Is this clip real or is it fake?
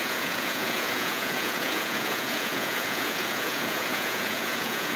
fake